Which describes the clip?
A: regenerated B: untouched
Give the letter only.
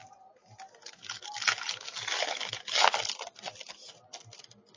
B